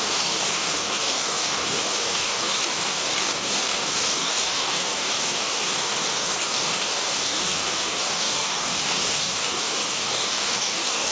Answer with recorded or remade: remade